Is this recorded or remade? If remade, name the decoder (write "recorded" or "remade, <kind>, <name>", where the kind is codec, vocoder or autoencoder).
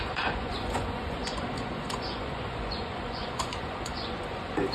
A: remade, vocoder, Vocos